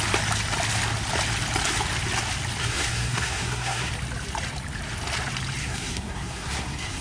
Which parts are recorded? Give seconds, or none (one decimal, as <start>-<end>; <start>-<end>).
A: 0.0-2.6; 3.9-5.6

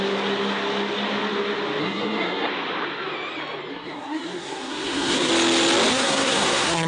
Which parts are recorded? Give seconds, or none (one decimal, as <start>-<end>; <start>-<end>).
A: 0.0-1.8; 2.5-3.7; 5.3-5.9

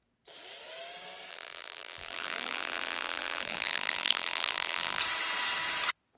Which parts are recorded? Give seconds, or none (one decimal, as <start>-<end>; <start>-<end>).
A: 0.0-1.3; 5.0-6.2